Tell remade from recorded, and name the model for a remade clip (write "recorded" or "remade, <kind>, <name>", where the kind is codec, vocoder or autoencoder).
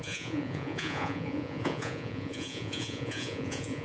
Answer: remade, vocoder, Vocos